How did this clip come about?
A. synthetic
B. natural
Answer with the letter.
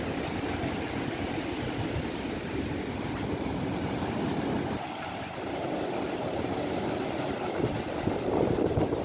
B